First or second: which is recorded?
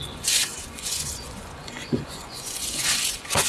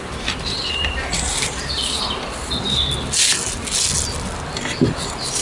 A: second